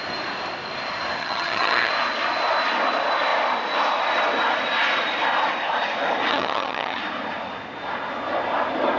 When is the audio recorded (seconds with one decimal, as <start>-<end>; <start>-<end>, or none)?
0.0-1.2; 1.9-6.3; 7.0-9.0

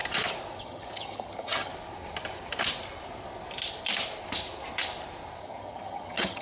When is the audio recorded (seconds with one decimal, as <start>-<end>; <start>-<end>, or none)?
0.0-0.6; 1.7-5.4

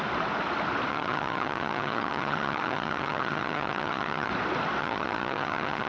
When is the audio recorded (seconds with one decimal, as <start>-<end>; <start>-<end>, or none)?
0.0-0.9; 4.3-4.8

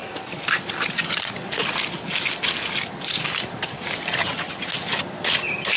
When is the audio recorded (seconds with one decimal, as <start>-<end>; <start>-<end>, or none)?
0.0-4.2; 4.7-5.8

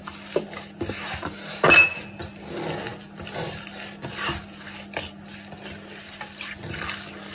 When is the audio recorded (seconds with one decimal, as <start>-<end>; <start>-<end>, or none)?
0.0-7.3

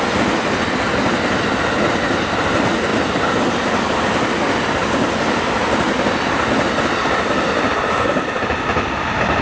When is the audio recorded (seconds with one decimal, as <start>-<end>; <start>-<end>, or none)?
0.0-9.4

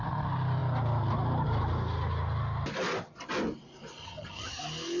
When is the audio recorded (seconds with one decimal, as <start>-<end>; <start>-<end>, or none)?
0.0-4.0; 4.6-5.0

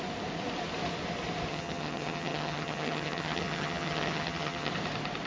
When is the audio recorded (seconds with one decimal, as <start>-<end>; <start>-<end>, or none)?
0.0-1.5; 4.7-5.3